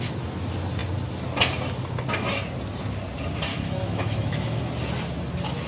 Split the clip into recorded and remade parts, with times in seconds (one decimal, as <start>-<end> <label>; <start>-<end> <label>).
0.0-3.5 recorded; 3.5-4.6 remade; 4.6-5.7 recorded